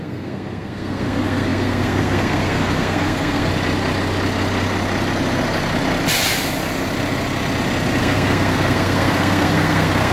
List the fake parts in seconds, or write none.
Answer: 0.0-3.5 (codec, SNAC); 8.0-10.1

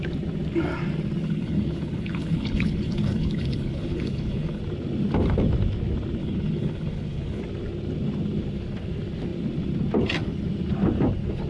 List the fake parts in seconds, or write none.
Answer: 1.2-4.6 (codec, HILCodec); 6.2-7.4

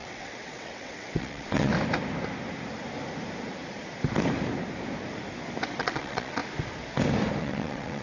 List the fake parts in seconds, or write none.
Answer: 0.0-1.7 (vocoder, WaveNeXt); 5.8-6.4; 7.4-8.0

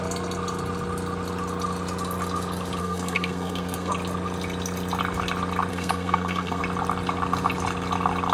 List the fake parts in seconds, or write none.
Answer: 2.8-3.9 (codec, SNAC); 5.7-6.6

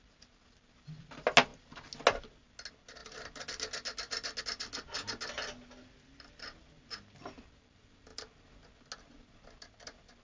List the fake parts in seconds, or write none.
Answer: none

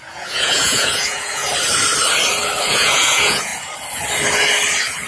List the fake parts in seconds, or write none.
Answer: 0.0-1.4 (vocoder, Vocos); 2.7-3.5

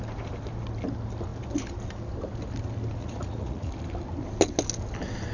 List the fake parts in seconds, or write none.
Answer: 3.0-3.7 (vocoder, Vocos)

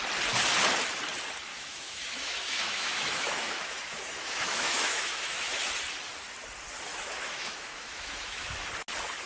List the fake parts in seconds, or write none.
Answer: 1.5-5.6 (autoencoder, DAC-VAE); 6.9-8.7